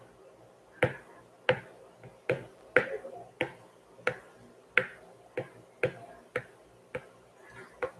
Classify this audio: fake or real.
real